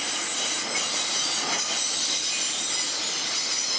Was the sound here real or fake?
real